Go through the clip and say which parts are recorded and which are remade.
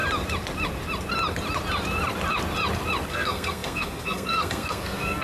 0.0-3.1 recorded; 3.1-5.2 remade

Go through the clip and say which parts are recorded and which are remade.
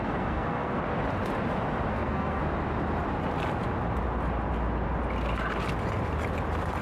0.0-0.8 remade; 0.8-1.9 recorded; 1.9-2.4 remade; 2.4-6.8 recorded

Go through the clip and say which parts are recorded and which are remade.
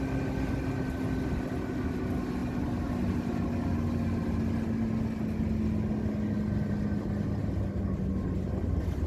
0.0-9.1 recorded